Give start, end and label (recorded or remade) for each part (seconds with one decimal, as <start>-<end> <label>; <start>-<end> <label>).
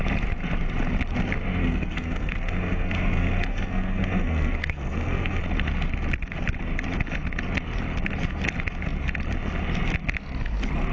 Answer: 0.0-1.6 recorded; 1.6-5.4 remade; 5.4-10.9 recorded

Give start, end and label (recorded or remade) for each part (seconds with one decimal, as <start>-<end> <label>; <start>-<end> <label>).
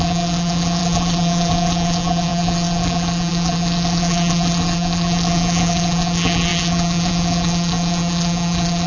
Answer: 0.0-8.9 remade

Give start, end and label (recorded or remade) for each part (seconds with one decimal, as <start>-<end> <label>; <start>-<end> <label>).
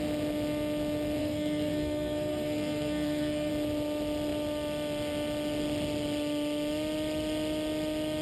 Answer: 0.0-1.2 recorded; 1.2-3.5 remade; 3.5-8.2 recorded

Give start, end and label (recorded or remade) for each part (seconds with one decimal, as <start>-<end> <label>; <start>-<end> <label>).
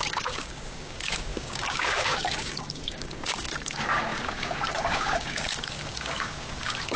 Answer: 0.0-7.0 remade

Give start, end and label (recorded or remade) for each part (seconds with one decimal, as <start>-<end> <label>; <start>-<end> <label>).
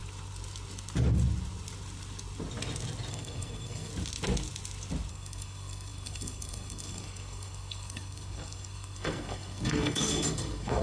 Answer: 0.0-3.1 recorded; 3.1-3.9 remade; 3.9-5.1 recorded; 5.1-10.8 remade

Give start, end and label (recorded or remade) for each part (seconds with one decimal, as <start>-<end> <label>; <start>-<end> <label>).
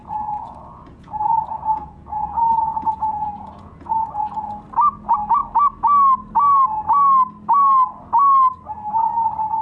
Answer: 0.0-4.5 remade; 4.5-9.6 recorded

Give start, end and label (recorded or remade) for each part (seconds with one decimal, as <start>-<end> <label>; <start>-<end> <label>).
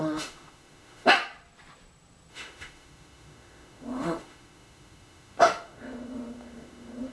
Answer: 0.0-1.2 remade; 1.2-2.3 recorded; 2.3-7.1 remade